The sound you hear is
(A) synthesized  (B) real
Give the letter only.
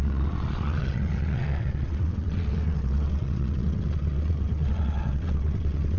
A